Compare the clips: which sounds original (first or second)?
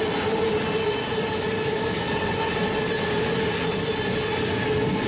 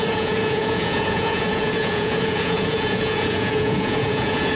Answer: first